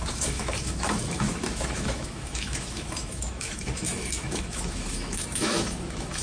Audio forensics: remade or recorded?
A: remade